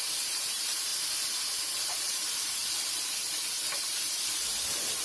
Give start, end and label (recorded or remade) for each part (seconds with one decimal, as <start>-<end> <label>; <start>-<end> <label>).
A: 0.0-0.9 remade; 0.9-1.9 recorded; 1.9-2.6 remade; 2.6-4.0 recorded; 4.0-4.5 remade; 4.5-5.0 recorded